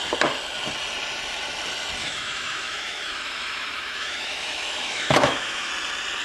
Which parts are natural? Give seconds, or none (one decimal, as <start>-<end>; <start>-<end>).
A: 0.0-2.0; 5.7-6.2